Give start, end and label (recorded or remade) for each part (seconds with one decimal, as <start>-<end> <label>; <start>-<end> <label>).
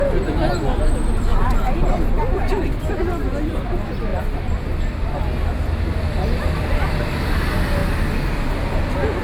0.0-1.3 recorded; 1.3-2.9 remade; 2.9-4.1 recorded; 4.1-7.2 remade; 7.2-7.8 recorded; 7.8-8.3 remade; 8.3-9.2 recorded